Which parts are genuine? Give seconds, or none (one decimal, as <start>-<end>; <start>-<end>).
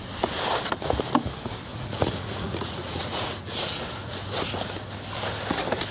0.0-1.7; 4.2-5.9